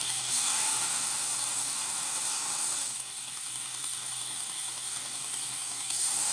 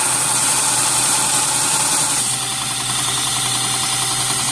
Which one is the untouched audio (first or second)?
second